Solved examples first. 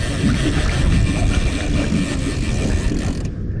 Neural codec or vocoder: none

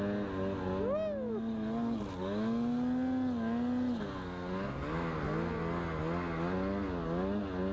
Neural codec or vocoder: none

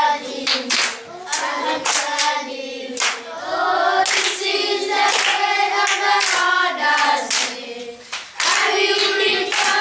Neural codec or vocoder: none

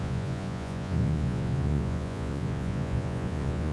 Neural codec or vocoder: vocoder, Vocos